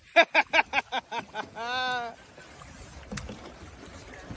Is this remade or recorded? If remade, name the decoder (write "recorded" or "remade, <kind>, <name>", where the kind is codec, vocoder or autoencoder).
recorded